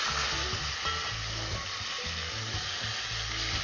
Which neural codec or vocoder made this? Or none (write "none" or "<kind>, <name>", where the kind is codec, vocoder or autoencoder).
none